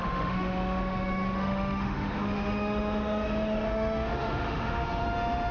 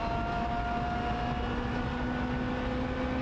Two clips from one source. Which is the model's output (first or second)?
first